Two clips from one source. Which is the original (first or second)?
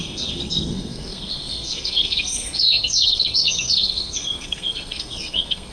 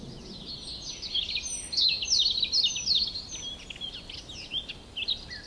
second